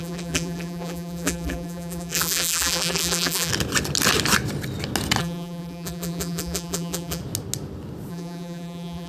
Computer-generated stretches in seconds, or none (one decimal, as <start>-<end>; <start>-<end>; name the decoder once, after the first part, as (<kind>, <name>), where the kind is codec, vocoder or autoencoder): 0.0-3.5 (vocoder, BigVGAN v2); 5.2-7.2; 8.1-9.1